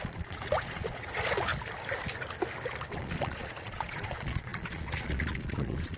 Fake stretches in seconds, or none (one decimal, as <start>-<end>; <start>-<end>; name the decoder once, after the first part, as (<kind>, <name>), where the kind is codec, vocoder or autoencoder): 0.0-1.5 (vocoder, Vocos); 2.9-6.0